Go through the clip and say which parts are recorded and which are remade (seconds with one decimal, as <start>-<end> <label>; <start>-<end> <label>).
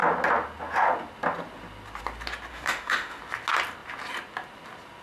0.0-2.5 recorded; 2.5-3.2 remade; 3.2-5.0 recorded